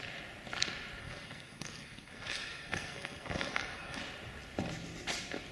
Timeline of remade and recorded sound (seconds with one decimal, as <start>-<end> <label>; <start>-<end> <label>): 0.0-1.0 recorded; 1.0-4.0 remade; 4.0-5.5 recorded